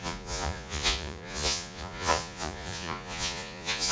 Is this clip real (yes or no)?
no